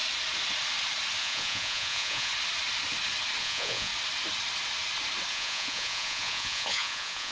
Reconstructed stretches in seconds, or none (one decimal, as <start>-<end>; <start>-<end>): 1.2-2.3; 3.4-3.9; 5.3-7.3